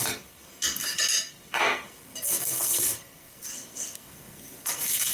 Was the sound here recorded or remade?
remade